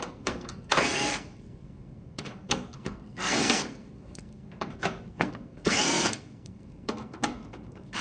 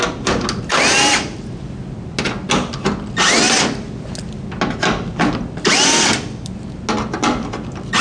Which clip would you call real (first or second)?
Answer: second